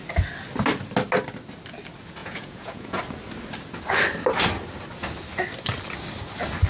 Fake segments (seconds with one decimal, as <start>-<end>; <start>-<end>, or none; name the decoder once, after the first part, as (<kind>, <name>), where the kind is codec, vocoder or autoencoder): 2.2-3.0 (vocoder, Vocos)